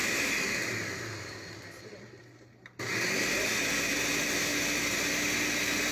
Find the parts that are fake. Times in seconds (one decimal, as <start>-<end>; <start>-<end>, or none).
none